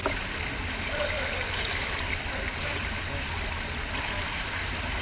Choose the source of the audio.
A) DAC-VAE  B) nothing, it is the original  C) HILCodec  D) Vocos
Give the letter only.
B